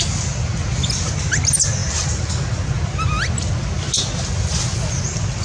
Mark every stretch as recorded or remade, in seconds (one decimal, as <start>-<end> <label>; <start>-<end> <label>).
0.0-5.4 recorded